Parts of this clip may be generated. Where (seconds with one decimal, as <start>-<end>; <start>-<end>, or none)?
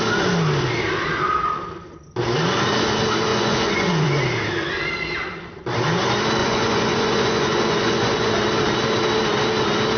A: 3.3-4.2; 6.4-8.3